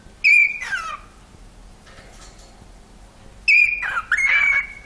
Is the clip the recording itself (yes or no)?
yes